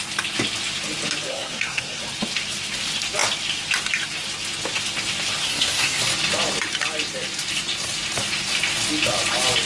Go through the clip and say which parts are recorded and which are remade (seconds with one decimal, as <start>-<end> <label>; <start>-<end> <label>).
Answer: 0.0-1.3 recorded; 1.3-2.0 remade; 2.0-5.4 recorded; 5.4-6.0 remade; 6.0-9.7 recorded